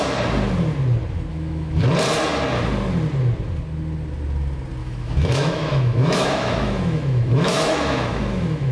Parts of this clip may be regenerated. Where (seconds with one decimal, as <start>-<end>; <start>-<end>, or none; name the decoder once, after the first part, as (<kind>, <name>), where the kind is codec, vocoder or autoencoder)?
1.3-1.8 (autoencoder, DAC-VAE); 4.8-8.7